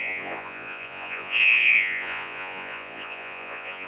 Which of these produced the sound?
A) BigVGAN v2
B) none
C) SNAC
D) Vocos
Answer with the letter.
D